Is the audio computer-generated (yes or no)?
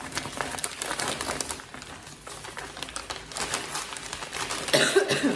no